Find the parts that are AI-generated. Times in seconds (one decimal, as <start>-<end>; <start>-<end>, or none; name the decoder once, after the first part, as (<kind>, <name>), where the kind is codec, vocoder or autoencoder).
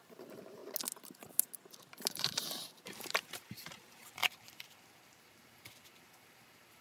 0.0-0.6 (vocoder, BigVGAN v2); 2.1-6.8